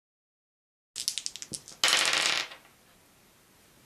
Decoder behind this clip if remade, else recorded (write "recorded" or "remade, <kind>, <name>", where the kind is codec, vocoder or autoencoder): recorded